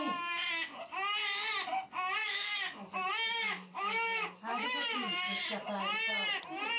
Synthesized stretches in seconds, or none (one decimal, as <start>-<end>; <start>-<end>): 2.2-5.4